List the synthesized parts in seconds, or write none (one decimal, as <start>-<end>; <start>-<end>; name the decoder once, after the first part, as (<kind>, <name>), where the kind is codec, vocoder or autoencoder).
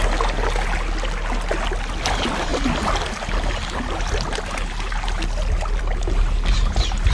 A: none